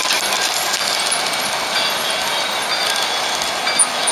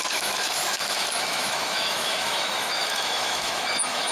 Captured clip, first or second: first